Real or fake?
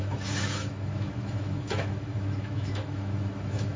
fake